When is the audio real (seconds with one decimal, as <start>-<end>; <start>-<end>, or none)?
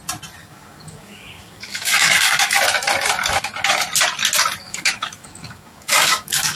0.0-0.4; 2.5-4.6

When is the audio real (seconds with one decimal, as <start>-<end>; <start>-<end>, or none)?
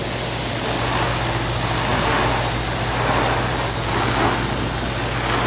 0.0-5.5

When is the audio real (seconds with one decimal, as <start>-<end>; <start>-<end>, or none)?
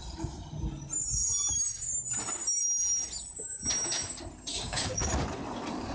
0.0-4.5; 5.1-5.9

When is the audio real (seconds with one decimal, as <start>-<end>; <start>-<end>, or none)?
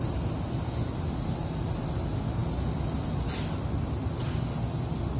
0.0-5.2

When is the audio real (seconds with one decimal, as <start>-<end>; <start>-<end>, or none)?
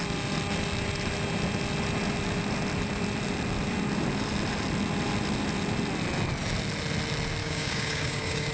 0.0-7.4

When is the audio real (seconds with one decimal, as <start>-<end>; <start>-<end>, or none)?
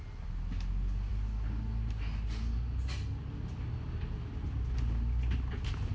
0.0-5.9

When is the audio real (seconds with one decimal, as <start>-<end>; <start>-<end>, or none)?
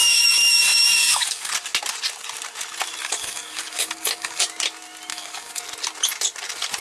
1.5-3.0; 4.4-5.1; 5.6-6.8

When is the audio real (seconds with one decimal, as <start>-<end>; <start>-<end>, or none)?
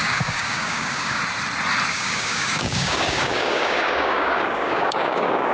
1.2-1.9